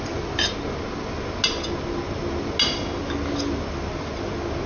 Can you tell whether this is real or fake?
real